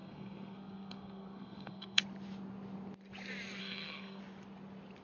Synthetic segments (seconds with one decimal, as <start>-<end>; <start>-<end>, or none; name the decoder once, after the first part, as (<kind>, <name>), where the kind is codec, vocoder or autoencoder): 0.0-2.0 (codec, SNAC); 3.6-4.2